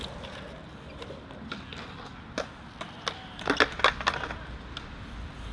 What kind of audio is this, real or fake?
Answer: real